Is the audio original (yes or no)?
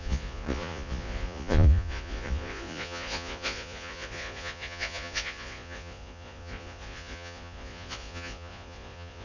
no